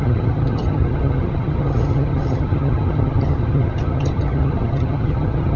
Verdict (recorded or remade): remade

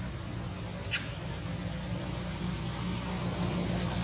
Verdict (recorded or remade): recorded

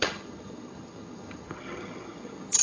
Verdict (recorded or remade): remade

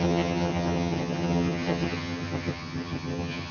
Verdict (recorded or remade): remade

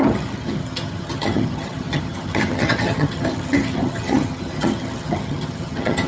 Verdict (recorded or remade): remade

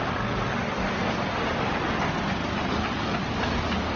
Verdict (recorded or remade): recorded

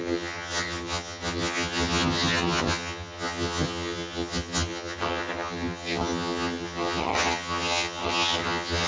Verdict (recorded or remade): remade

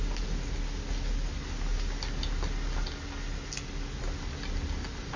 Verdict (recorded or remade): recorded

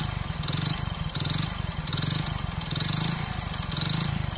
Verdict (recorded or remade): recorded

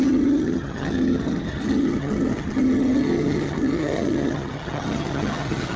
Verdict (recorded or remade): remade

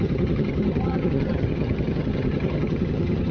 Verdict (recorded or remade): remade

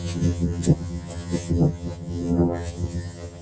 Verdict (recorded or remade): remade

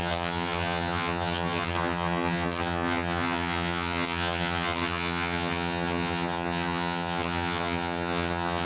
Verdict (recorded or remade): remade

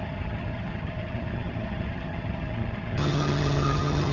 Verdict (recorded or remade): remade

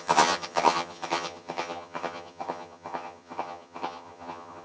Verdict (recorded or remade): remade